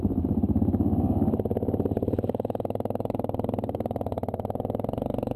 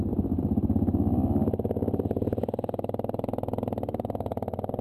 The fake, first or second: first